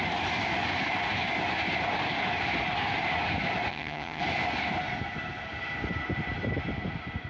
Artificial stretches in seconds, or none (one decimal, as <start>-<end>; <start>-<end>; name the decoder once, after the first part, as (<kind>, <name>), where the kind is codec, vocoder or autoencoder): 3.7-4.2 (vocoder, HiFi-GAN)